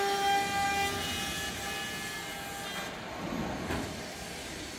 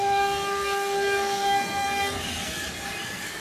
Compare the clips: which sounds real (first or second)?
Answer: first